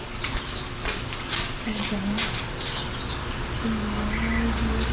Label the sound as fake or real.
real